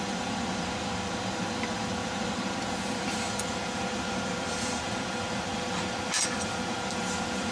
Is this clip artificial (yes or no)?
yes